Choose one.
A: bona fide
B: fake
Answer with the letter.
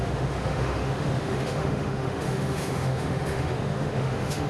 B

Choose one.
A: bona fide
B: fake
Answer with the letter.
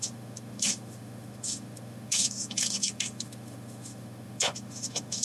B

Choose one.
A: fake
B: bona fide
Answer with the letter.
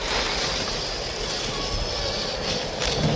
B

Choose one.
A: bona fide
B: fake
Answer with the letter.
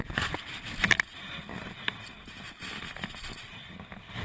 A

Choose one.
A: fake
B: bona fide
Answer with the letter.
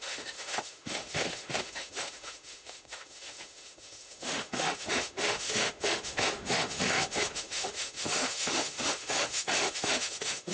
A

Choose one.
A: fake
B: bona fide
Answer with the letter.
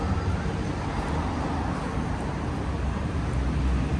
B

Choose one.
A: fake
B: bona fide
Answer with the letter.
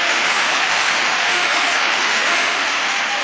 A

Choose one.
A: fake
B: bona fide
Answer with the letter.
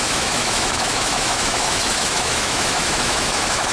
A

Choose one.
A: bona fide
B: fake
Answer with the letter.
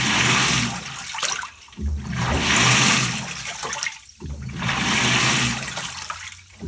A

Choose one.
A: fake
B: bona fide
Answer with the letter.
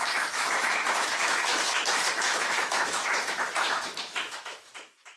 A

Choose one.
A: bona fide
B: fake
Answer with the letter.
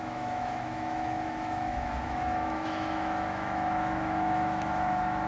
B